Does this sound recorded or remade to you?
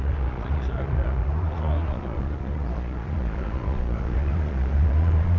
remade